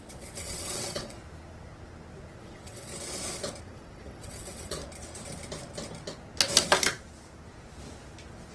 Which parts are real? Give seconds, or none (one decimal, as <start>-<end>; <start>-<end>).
1.2-2.4; 2.9-3.6; 4.8-8.5